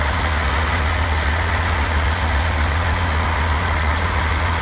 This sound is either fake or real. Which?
fake